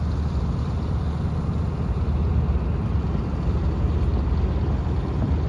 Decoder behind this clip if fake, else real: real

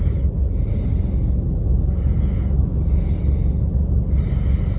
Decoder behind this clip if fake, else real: real